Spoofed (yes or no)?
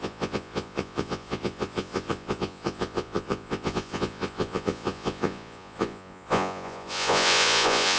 yes